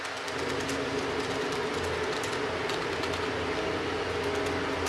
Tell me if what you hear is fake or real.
real